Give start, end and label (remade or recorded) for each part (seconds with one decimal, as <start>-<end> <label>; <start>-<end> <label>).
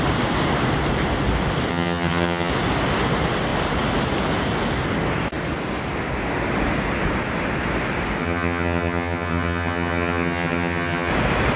0.0-1.7 recorded; 1.7-2.5 remade; 2.5-8.2 recorded; 8.2-11.1 remade; 11.1-11.6 recorded